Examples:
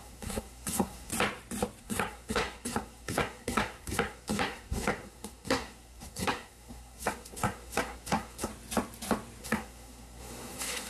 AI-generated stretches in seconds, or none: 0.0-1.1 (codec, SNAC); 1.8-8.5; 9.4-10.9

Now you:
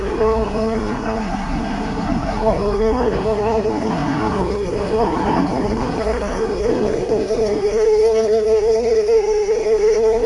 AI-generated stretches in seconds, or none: 0.0-10.3 (codec, SNAC)